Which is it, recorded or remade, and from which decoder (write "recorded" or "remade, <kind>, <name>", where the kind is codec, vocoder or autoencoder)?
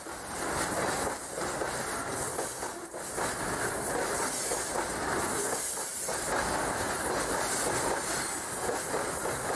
recorded